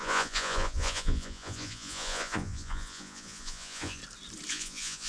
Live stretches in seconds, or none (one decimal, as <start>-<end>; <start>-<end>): 4.0-4.5